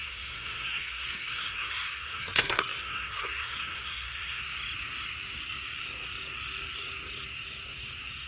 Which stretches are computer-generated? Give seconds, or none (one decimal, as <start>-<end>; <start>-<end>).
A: 0.0-4.4